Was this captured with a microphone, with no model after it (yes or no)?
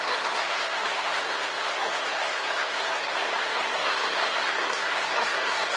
no